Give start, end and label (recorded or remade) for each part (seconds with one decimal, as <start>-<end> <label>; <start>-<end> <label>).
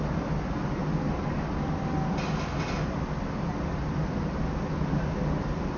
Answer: 0.0-5.8 recorded